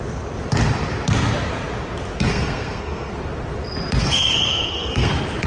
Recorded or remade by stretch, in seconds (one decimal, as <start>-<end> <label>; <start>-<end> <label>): 0.0-2.3 recorded; 2.3-3.1 remade; 3.1-4.0 recorded; 4.0-5.1 remade; 5.1-5.5 recorded